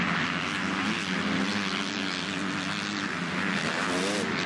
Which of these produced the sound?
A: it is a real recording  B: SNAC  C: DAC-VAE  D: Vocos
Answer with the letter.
A